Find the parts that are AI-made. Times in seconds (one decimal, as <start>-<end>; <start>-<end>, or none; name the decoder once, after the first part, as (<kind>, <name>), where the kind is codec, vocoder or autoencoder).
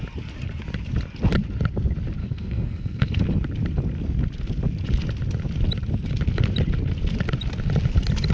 2.2-3.2 (codec, SNAC)